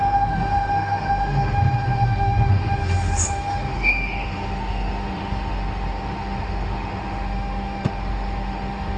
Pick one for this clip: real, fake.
fake